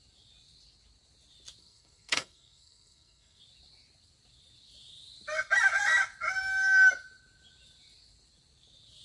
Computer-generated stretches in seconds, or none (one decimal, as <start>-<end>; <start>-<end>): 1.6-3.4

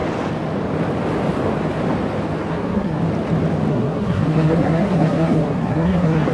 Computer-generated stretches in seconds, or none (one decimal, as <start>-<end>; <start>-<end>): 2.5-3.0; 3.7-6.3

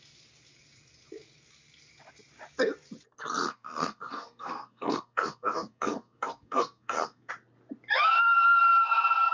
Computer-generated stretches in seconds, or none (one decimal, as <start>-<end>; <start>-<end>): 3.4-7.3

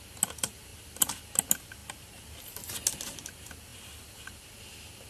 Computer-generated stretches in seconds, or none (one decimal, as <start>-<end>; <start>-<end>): none

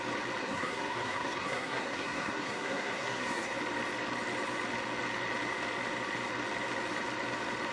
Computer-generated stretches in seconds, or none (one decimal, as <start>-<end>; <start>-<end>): 0.4-3.5